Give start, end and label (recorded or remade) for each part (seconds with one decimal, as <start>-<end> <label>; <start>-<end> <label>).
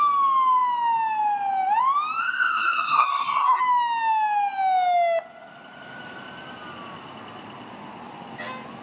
0.0-2.2 recorded; 2.2-3.6 remade; 3.6-8.8 recorded